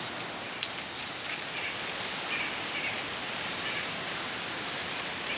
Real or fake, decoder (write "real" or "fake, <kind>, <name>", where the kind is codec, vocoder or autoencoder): real